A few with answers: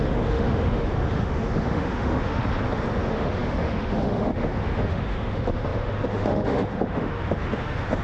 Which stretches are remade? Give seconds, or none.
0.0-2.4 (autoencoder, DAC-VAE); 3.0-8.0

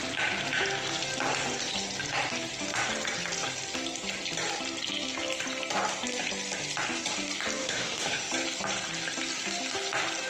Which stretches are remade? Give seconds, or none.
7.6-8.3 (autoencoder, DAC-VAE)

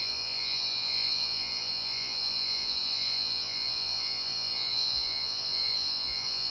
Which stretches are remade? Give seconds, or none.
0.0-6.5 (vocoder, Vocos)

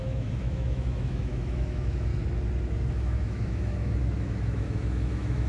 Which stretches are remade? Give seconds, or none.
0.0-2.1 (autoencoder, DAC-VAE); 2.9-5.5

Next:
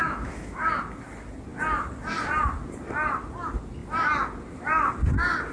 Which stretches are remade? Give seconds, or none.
0.0-0.7 (autoencoder, DAC-VAE)

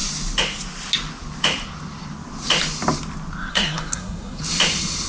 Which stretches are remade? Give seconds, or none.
3.5-4.4 (codec, SNAC)